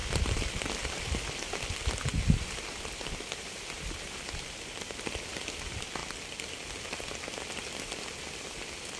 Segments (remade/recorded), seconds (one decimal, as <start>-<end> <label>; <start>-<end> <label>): 0.0-1.0 remade; 1.0-2.1 recorded; 2.1-5.3 remade; 5.3-9.0 recorded